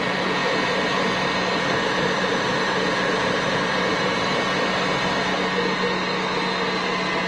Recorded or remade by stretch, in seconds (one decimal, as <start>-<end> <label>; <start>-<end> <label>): 0.0-3.9 recorded; 3.9-4.4 remade; 4.4-7.3 recorded